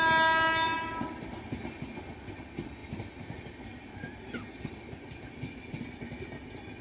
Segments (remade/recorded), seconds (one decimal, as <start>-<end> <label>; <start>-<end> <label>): 0.0-6.8 recorded